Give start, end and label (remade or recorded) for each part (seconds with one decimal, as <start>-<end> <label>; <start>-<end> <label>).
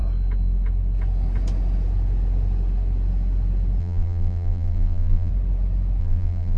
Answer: 0.0-3.8 recorded; 3.8-5.3 remade; 5.3-6.0 recorded; 6.0-6.6 remade